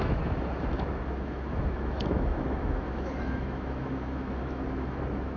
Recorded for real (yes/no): no